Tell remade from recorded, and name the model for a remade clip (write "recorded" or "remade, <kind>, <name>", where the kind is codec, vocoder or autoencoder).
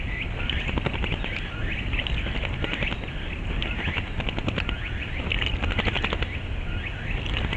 recorded